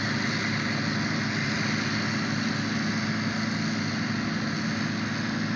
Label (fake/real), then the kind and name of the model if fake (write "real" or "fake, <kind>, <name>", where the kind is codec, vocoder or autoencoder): real